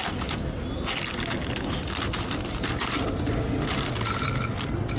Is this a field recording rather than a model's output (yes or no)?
yes